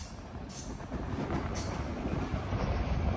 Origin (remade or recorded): recorded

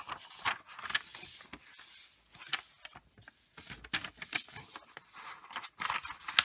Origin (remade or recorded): recorded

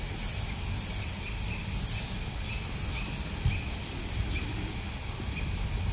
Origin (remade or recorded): recorded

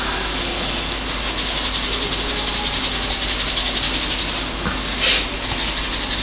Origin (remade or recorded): recorded